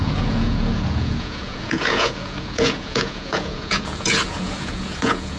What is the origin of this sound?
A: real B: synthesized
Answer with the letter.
B